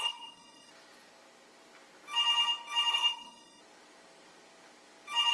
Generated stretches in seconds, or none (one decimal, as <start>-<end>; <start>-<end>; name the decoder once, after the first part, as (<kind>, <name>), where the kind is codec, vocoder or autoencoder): 0.0-0.7 (codec, SNAC); 2.9-3.6